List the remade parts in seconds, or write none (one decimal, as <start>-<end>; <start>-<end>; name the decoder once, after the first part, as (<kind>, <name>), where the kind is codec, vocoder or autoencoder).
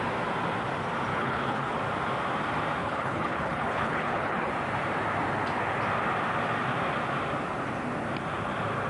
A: 1.1-1.8 (codec, HILCodec); 2.8-4.5